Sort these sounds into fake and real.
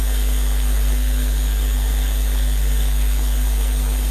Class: fake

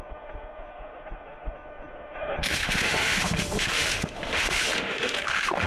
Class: fake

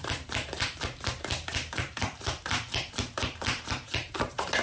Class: fake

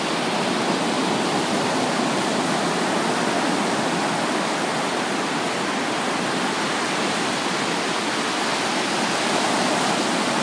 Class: real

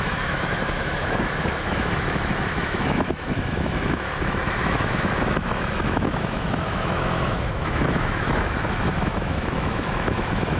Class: fake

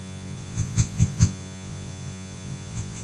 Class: fake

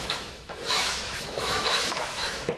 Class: fake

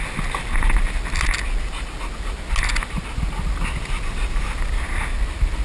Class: real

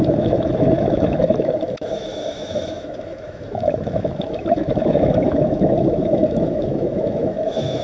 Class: fake